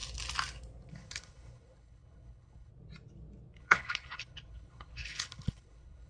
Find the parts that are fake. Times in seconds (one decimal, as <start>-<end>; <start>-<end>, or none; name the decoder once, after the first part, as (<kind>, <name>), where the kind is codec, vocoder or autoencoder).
0.9-2.7 (codec, HILCodec); 3.6-6.1